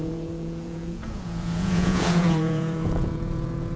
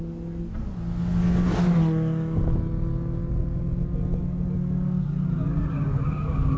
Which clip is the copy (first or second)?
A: first